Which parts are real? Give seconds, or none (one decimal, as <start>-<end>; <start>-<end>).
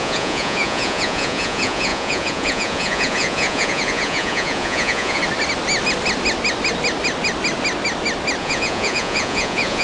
5.2-8.4